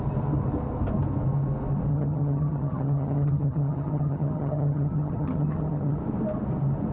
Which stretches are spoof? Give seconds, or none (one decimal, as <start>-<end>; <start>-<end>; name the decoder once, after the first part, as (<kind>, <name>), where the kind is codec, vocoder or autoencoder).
1.9-6.0 (vocoder, HiFi-GAN)